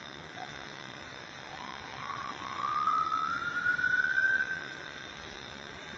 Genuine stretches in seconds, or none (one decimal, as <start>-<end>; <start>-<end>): 3.4-4.0

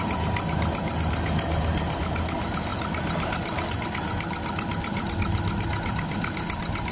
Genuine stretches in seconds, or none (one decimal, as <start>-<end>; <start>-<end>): 0.0-6.9

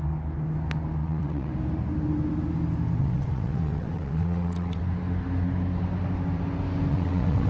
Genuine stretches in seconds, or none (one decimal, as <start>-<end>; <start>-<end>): 0.0-1.0; 1.5-3.0; 4.8-6.9

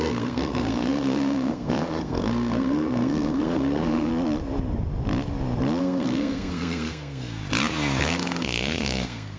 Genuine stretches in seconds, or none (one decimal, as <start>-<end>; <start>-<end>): 4.1-5.8; 7.4-8.0